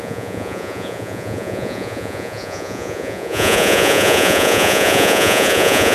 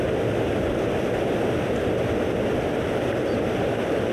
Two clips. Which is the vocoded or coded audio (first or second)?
first